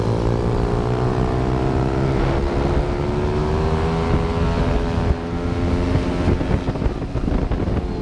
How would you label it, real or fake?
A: real